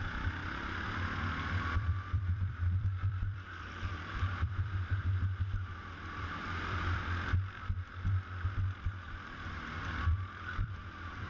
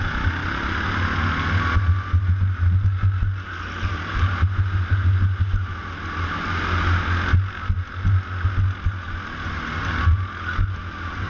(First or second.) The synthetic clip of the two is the first